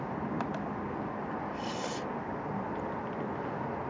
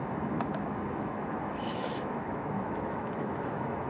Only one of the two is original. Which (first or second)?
first